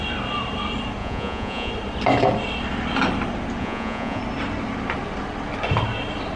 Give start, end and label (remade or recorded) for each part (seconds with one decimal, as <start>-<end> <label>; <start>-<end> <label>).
0.0-1.0 recorded; 1.0-1.7 remade; 1.7-3.6 recorded; 3.6-4.2 remade; 4.2-6.4 recorded